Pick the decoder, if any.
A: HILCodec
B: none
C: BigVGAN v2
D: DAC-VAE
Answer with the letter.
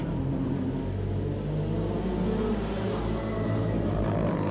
B